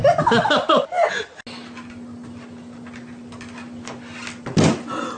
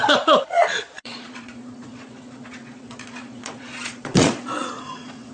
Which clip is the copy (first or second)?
second